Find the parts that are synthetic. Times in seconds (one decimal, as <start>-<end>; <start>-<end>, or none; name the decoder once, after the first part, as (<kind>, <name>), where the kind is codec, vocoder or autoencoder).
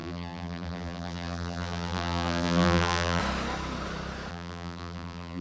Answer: 0.0-3.2 (vocoder, BigVGAN v2); 4.3-5.4